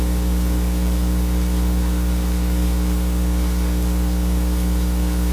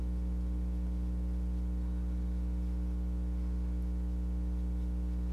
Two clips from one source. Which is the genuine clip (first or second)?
second